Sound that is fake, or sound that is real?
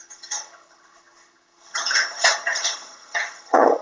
fake